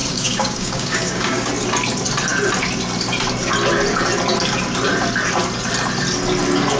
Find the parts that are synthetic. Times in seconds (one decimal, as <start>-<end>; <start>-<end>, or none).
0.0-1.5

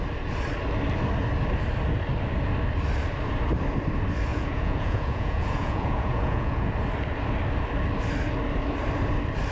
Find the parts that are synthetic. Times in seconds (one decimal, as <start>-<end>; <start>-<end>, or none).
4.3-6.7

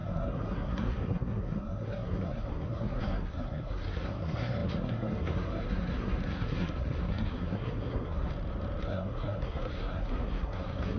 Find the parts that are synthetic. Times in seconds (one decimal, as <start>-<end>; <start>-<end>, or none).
0.0-8.3; 8.8-11.0

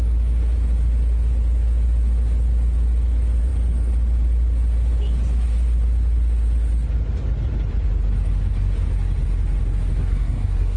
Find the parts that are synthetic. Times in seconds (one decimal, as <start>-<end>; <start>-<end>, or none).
10.0-10.8

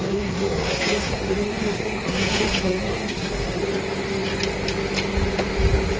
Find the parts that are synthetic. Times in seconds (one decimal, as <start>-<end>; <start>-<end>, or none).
0.0-3.6